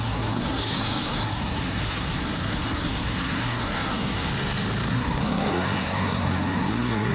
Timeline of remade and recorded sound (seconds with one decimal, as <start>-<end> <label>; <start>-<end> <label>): 0.0-4.3 remade; 4.3-4.9 recorded; 4.9-7.1 remade